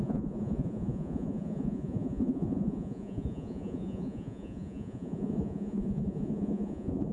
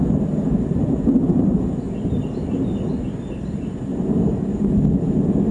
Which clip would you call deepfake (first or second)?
first